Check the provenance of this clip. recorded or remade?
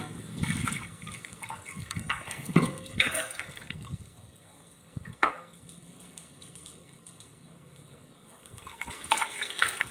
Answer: remade